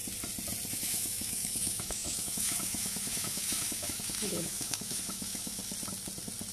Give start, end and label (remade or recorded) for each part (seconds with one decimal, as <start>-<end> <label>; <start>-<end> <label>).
0.0-0.7 recorded; 0.7-5.6 remade; 5.6-6.5 recorded